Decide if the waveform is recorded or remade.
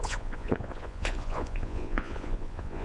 remade